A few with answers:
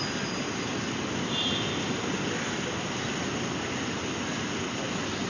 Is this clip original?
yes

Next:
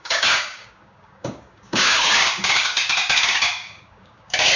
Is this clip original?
no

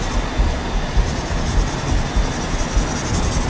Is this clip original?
yes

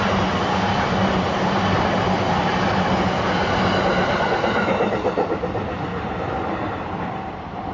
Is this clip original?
yes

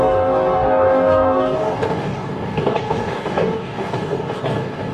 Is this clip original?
no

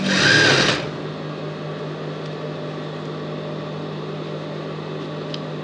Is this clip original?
yes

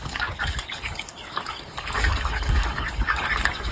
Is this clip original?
no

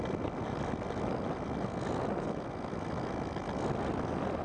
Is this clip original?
yes